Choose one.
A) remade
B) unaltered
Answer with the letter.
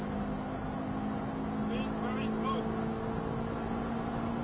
B